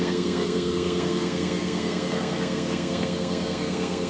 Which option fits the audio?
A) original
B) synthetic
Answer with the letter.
B